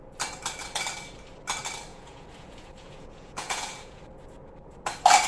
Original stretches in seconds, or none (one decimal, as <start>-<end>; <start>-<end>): 0.0-1.9; 4.0-5.3

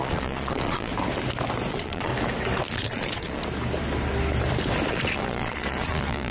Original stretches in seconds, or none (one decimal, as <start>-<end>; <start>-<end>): 0.9-1.7; 2.1-2.7; 3.4-4.9

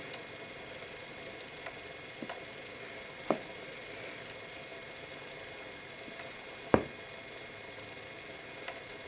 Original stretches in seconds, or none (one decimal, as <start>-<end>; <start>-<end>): 0.0-9.1

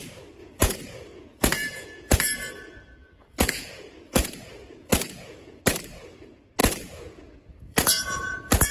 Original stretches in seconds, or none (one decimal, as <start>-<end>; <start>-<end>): 0.0-0.4; 5.6-6.6

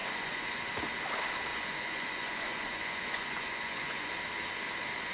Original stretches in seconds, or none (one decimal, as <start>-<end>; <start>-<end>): 0.7-1.5; 4.1-5.1

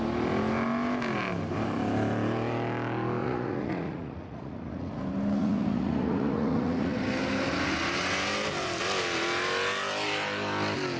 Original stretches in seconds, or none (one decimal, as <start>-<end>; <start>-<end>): 0.0-3.2; 5.0-5.4; 7.0-11.0

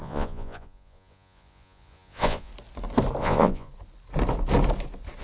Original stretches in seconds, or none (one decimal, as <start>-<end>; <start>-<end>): 2.5-3.2; 3.7-5.2